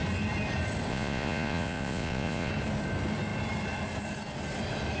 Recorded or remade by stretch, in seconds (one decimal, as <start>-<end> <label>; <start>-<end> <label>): 0.0-0.9 recorded; 0.9-2.5 remade; 2.5-5.0 recorded